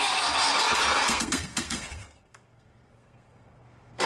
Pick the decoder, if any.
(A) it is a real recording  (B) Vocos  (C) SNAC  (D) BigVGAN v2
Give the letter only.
C